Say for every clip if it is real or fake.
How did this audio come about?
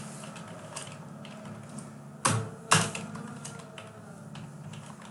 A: real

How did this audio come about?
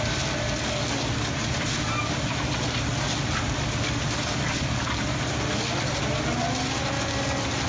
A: real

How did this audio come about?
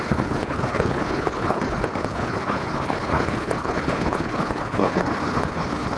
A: fake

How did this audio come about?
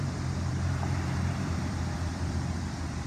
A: fake